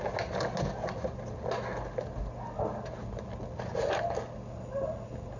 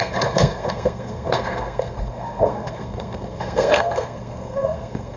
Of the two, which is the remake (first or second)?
second